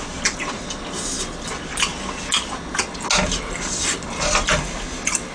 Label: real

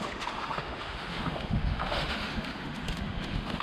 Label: fake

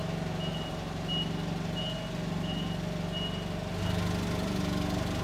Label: real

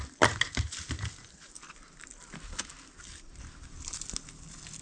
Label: real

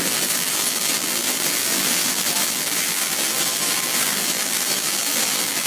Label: fake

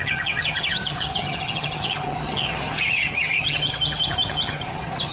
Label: fake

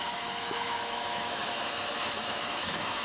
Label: fake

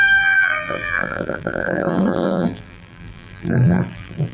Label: fake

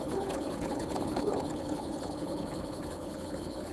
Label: fake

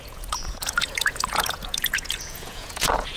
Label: fake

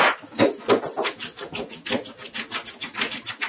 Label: real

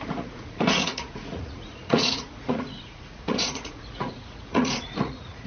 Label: fake